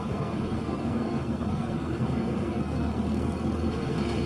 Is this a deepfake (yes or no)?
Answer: yes